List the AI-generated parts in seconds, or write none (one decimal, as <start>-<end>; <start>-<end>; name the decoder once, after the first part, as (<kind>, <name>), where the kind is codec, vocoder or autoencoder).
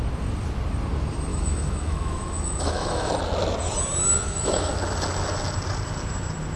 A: 1.3-3.1 (autoencoder, DAC-VAE); 4.1-4.7